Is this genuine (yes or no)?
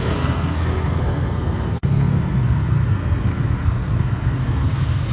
no